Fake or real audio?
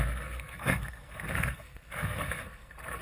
fake